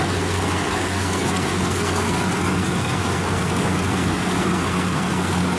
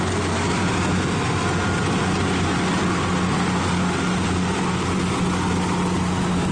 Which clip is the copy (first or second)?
first